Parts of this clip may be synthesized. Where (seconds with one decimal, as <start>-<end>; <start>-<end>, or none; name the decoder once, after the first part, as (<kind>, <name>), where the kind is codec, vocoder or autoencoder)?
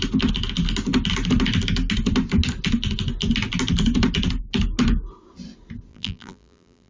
5.9-6.9 (vocoder, BigVGAN v2)